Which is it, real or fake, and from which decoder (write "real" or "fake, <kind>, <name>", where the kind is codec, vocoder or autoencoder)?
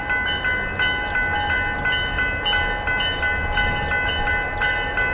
real